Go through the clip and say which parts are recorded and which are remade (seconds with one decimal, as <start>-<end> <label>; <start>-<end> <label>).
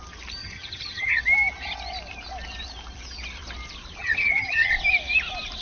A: 0.0-0.4 recorded; 0.4-1.2 remade; 1.2-4.0 recorded; 4.0-4.7 remade; 4.7-5.6 recorded